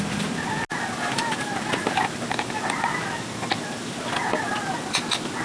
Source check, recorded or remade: recorded